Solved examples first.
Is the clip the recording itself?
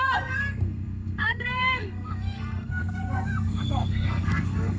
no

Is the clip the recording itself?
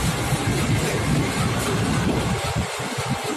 yes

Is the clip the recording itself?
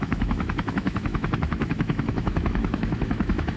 no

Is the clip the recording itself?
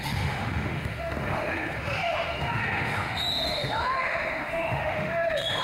no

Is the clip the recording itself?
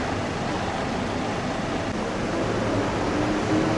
yes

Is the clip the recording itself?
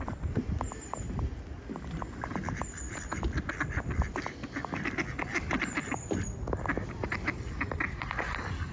no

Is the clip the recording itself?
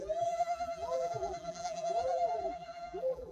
no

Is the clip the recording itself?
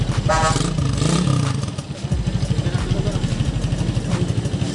yes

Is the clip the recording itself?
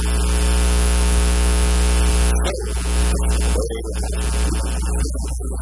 yes